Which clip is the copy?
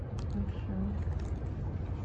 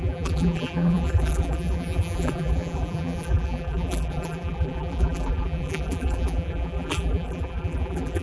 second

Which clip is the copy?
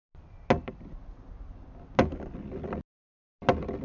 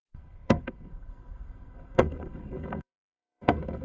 second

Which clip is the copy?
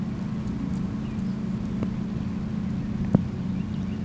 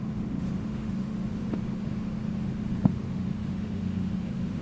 second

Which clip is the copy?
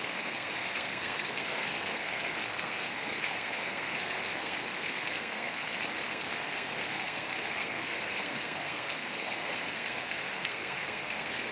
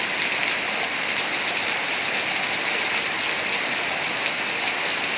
first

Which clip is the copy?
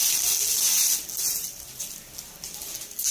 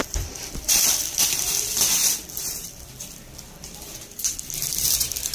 second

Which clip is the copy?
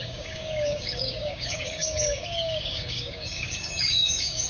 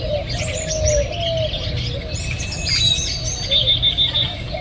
first